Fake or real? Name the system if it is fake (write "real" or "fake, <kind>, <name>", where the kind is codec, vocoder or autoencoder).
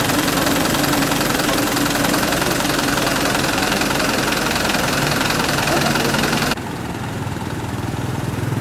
fake, vocoder, BigVGAN v2